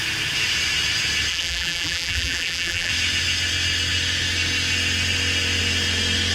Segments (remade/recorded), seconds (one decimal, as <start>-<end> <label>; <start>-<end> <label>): 0.0-1.3 recorded; 1.3-2.9 remade; 2.9-6.3 recorded